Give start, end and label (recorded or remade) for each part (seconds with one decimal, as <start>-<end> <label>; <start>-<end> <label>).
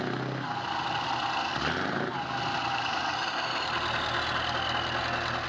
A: 0.0-5.5 recorded